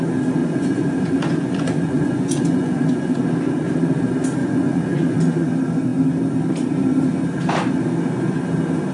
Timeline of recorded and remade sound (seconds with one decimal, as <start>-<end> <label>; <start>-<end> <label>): 0.0-0.4 recorded; 0.4-3.2 remade; 3.2-4.4 recorded; 4.4-5.5 remade; 5.5-8.9 recorded